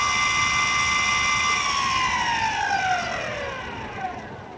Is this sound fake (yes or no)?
no